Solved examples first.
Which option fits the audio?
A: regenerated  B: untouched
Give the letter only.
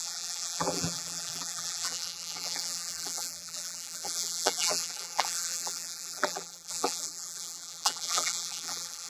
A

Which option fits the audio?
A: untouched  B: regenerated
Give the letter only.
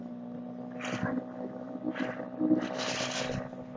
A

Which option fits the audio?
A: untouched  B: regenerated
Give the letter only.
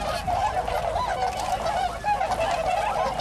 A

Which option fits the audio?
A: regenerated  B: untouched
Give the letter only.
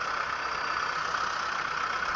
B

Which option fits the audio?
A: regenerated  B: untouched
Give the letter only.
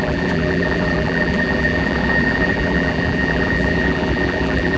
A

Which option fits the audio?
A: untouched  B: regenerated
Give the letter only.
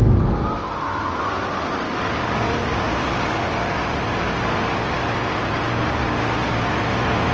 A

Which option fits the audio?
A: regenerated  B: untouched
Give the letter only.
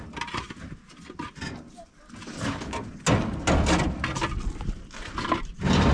B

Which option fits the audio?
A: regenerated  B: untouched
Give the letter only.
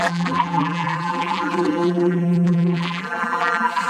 A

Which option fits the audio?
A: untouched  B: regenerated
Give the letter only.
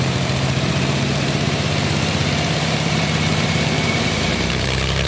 B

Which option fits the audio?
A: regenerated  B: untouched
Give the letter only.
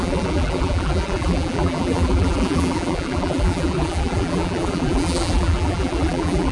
A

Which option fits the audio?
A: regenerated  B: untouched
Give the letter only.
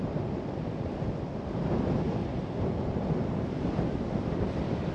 B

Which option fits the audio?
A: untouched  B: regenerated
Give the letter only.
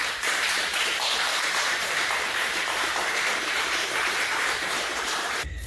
B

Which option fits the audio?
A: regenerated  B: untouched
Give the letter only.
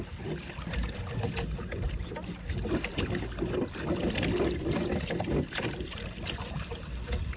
B